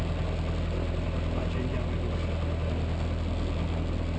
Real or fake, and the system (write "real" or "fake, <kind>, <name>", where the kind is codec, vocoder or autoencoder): real